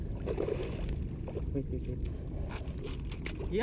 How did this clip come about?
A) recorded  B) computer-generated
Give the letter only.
B